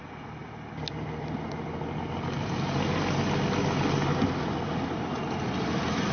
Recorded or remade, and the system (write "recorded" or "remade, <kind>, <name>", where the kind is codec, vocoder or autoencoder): recorded